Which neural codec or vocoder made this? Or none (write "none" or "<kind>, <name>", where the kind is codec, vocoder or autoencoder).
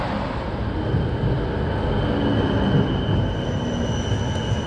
none